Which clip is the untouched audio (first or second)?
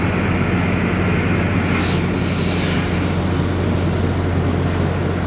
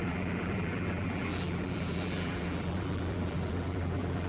first